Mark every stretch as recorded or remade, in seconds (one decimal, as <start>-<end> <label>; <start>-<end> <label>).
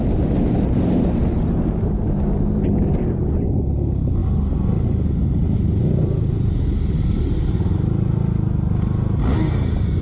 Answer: 0.0-10.0 recorded